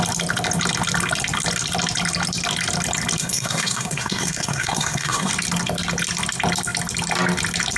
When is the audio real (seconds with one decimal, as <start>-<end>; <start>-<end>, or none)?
0.0-3.2; 5.3-7.8